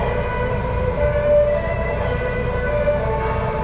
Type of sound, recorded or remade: recorded